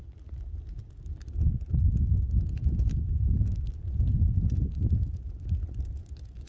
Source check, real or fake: real